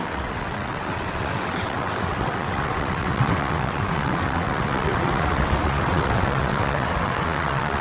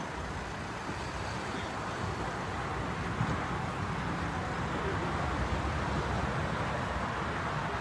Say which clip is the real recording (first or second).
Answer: second